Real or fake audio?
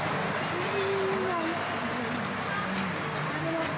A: real